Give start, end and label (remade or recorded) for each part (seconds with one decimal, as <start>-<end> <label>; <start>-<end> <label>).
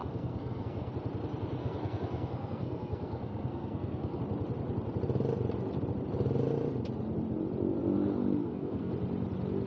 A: 0.0-0.9 remade; 0.9-1.6 recorded; 1.6-4.2 remade; 4.2-8.4 recorded; 8.4-8.9 remade; 8.9-9.7 recorded